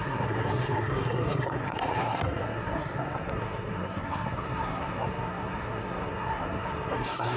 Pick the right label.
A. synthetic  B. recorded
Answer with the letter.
A